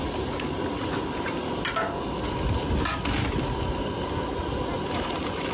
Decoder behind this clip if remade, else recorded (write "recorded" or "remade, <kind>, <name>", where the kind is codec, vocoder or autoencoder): recorded